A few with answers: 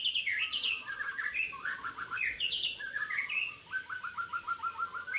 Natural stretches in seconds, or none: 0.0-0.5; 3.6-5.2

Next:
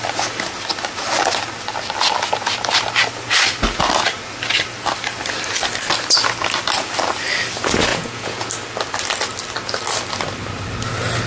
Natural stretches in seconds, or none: 0.0-7.9; 8.5-11.3

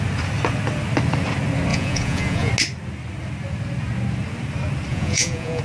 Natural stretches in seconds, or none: 0.0-1.7; 2.5-4.9

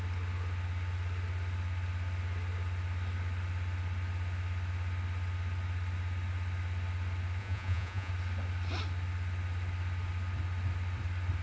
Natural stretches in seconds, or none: 0.0-7.4; 8.1-11.4